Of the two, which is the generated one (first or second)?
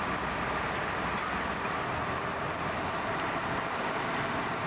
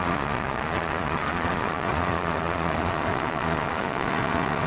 second